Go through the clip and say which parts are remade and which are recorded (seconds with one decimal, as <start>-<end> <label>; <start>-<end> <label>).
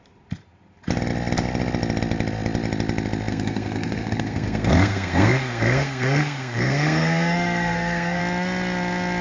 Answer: 0.0-3.3 recorded; 3.3-8.2 remade; 8.2-9.2 recorded